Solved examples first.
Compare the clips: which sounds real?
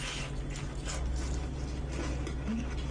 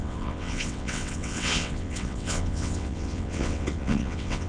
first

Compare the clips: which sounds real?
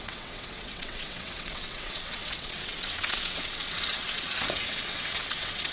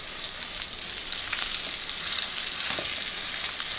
second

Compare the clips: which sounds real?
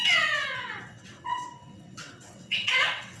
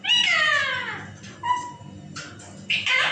second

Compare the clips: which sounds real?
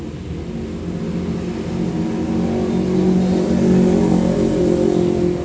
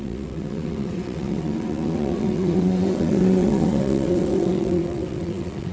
first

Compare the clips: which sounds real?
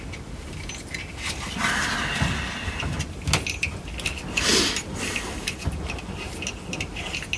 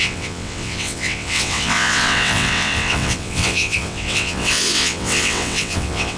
first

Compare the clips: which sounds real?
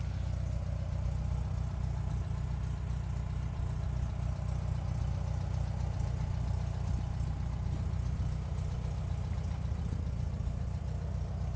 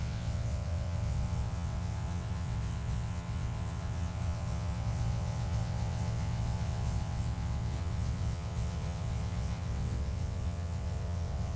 first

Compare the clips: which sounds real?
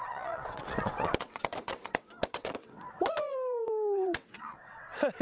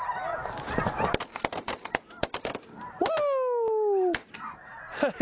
second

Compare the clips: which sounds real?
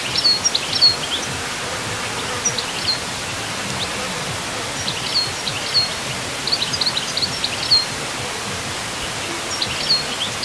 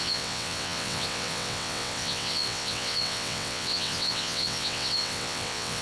first